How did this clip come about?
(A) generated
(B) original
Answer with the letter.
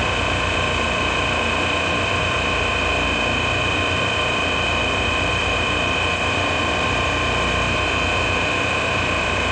A